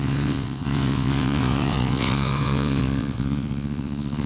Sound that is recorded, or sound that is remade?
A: remade